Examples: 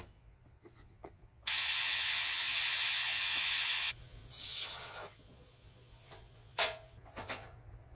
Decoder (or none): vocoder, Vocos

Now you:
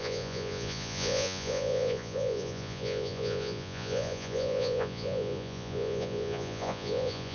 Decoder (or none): vocoder, Vocos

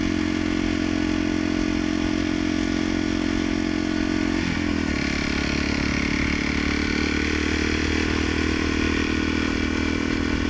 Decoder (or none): none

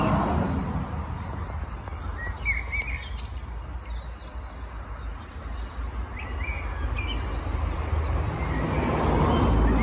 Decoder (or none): none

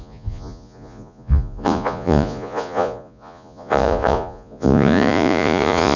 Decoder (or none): vocoder, Vocos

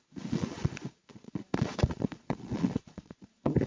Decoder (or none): vocoder, Vocos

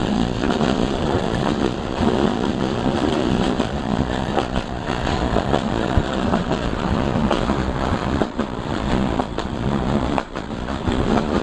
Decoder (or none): vocoder, Vocos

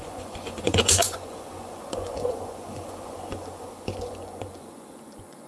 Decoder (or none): vocoder, Vocos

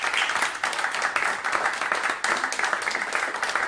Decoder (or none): none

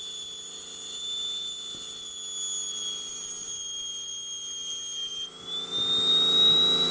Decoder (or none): none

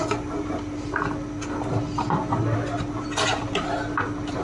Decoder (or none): none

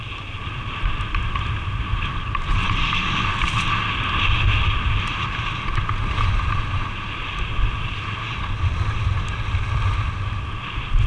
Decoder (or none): none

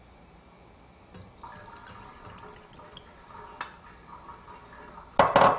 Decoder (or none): none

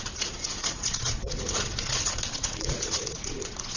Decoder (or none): vocoder, Vocos